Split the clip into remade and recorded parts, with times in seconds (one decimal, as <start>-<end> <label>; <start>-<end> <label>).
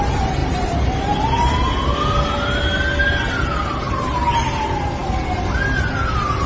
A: 0.0-0.4 recorded; 0.4-1.2 remade; 1.2-6.5 recorded